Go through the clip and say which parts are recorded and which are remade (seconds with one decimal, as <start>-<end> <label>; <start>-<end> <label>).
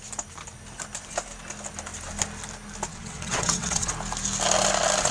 0.0-2.9 recorded; 2.9-3.9 remade; 3.9-5.1 recorded